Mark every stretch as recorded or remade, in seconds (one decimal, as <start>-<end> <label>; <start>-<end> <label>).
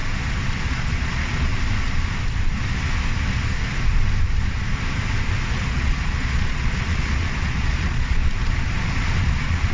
0.0-0.6 recorded; 0.6-1.5 remade; 1.5-5.5 recorded; 5.5-8.2 remade; 8.2-9.2 recorded; 9.2-9.7 remade